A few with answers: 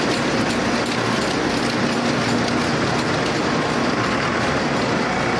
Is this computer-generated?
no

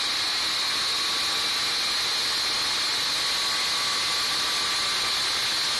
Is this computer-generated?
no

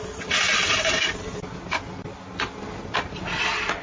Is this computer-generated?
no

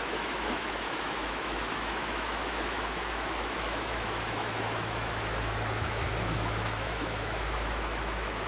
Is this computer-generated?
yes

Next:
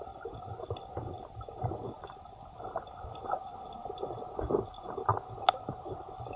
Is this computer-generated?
no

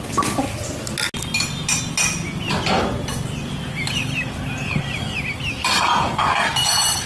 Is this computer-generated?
no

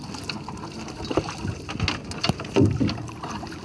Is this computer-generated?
no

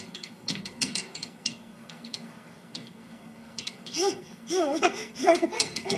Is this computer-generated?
yes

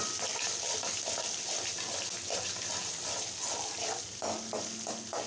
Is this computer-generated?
no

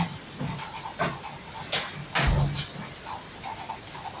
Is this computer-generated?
no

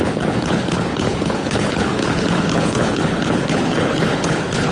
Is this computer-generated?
yes